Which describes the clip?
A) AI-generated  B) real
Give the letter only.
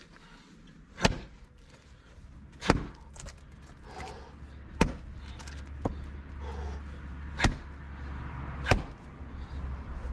B